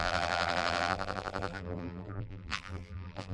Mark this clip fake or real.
fake